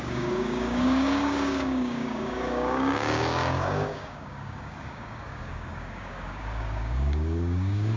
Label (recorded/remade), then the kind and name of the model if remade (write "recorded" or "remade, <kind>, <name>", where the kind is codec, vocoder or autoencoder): remade, codec, DAC